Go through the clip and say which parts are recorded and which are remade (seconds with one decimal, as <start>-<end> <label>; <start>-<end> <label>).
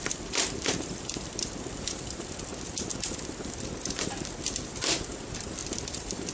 0.0-6.3 recorded